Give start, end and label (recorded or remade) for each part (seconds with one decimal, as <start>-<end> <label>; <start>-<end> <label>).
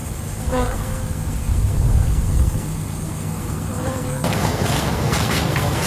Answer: 0.0-5.9 remade